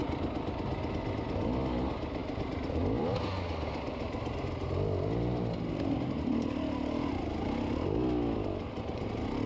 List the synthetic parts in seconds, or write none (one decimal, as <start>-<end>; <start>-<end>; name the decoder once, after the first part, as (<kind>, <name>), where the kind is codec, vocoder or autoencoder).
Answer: 2.2-2.8 (vocoder, BigVGAN v2)